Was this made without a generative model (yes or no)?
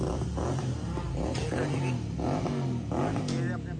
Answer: yes